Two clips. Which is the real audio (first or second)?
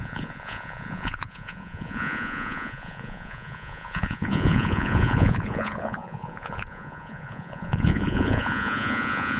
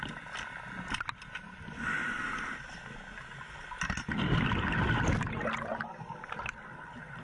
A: second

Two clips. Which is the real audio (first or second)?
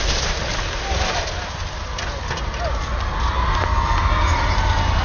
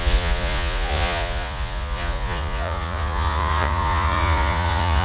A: first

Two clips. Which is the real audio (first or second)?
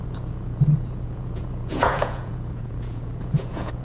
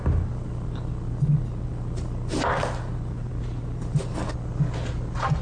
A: second